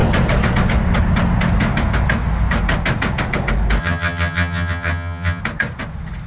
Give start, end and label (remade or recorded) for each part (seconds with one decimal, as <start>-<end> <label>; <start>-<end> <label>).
0.0-3.8 recorded; 3.8-5.4 remade; 5.4-6.3 recorded